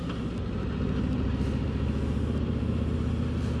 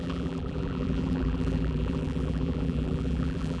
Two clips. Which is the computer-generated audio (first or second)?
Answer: second